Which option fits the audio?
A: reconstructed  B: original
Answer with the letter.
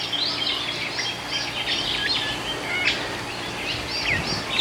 B